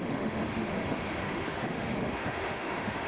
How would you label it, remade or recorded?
remade